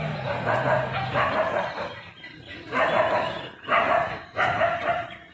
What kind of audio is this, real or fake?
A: fake